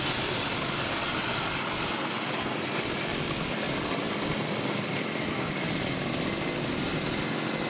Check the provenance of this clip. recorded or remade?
recorded